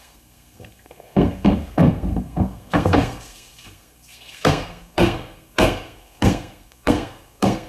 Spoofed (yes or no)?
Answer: yes